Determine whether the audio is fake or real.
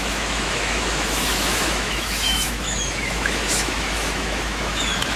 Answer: fake